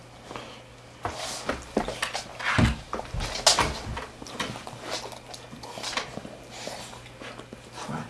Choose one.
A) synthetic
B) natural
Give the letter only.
B